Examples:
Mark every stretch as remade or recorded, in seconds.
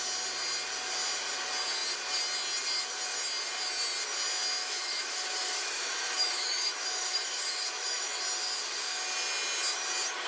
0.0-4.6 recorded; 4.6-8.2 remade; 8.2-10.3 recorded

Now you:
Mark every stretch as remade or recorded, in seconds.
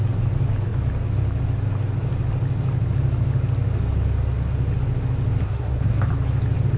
0.0-5.4 recorded; 5.4-6.0 remade; 6.0-6.8 recorded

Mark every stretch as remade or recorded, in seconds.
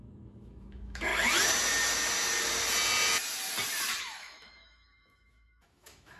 0.0-1.1 remade; 1.1-4.0 recorded; 4.0-6.2 remade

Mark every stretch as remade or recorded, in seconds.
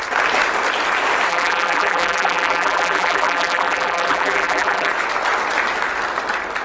0.0-1.3 recorded; 1.3-4.9 remade; 4.9-6.6 recorded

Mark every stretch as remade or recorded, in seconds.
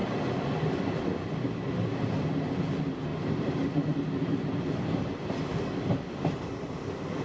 0.0-7.2 recorded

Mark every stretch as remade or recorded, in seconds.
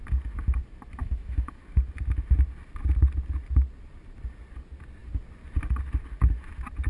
0.0-1.0 recorded; 1.0-1.6 remade; 1.6-6.9 recorded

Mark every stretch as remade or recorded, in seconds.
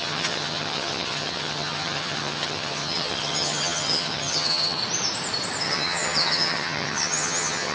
0.0-4.8 remade; 4.8-5.6 recorded; 5.6-7.7 remade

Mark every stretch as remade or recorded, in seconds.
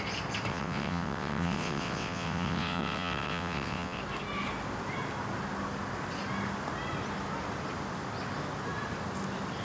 0.0-0.5 recorded; 0.5-4.0 remade; 4.0-9.6 recorded